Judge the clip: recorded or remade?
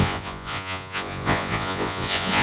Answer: remade